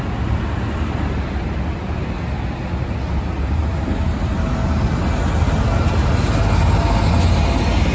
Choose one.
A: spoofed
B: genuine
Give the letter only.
B